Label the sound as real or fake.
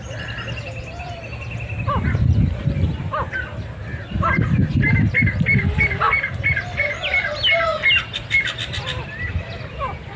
real